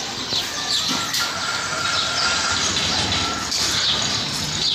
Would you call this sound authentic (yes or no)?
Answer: yes